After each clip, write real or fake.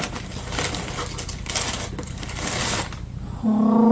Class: real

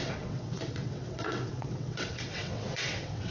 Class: fake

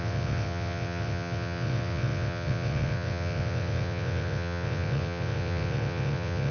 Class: fake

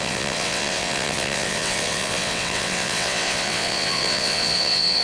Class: fake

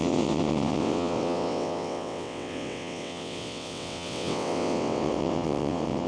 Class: fake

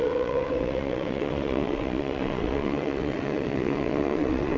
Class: fake